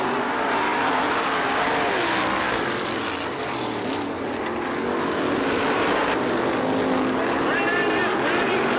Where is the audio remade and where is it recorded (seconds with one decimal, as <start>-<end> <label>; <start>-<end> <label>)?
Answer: 0.0-8.8 recorded